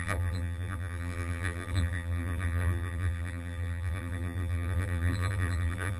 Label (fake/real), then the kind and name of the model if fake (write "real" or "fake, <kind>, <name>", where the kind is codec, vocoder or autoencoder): fake, vocoder, BigVGAN v2